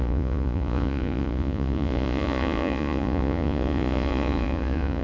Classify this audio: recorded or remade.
remade